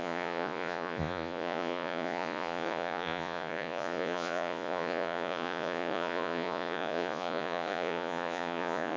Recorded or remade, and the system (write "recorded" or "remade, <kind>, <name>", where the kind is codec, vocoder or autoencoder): remade, vocoder, Vocos